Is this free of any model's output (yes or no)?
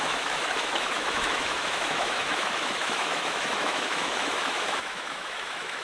no